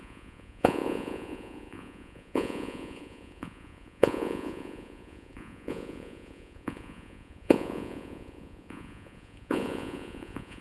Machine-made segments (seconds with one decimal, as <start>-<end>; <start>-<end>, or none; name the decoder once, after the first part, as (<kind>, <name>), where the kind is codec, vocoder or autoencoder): 0.0-10.6 (vocoder, Vocos)